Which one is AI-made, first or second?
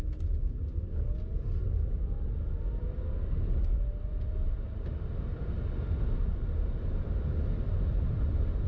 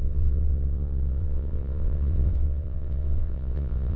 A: second